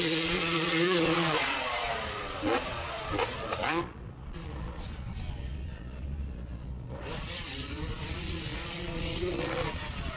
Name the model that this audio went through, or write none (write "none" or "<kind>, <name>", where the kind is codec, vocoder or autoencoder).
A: vocoder, Vocos